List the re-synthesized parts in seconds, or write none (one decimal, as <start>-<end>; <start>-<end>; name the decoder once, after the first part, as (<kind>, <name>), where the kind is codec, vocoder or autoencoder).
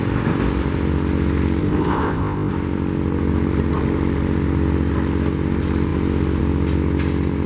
1.6-2.5 (codec, ZipCodec)